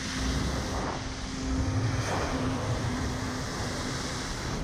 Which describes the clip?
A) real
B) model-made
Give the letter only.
A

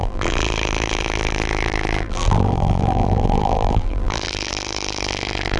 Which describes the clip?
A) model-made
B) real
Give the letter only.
A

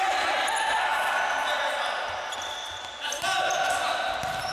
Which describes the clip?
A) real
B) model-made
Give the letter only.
A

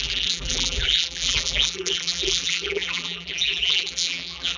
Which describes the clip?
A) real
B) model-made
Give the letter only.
B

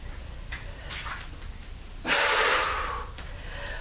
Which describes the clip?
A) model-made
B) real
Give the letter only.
B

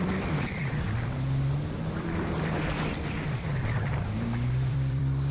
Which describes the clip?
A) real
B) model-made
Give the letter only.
B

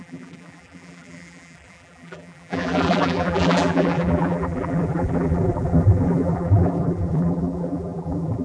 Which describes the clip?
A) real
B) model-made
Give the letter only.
B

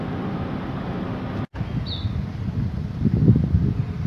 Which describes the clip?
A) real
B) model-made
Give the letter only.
A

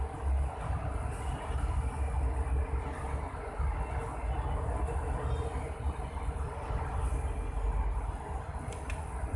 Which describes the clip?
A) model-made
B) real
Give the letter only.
B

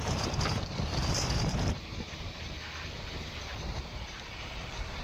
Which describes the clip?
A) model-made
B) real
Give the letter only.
A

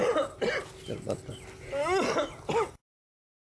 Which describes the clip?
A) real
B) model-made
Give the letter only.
A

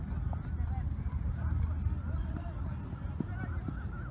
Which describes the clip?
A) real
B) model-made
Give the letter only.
A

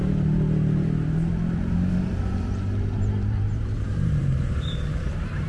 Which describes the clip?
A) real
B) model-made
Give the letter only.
B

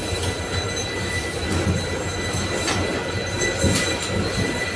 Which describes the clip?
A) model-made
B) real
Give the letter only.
B